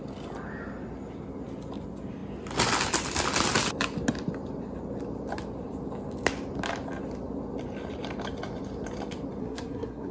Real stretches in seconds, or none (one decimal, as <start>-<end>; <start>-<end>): 0.0-9.4